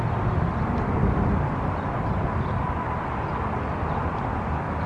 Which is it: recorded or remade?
recorded